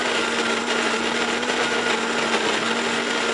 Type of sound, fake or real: real